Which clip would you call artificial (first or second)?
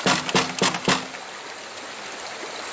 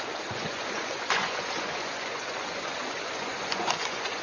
second